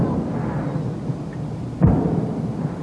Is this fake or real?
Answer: real